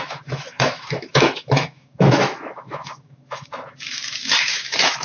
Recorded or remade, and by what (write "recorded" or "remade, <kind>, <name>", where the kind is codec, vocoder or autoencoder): remade, autoencoder, DAC-VAE